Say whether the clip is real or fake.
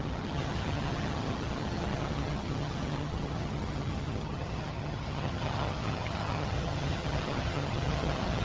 fake